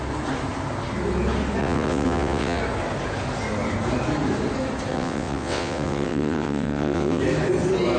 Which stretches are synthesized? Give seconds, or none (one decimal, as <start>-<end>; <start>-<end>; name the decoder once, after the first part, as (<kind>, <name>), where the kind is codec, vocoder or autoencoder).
1.6-2.6 (vocoder, WaveNeXt); 4.9-7.2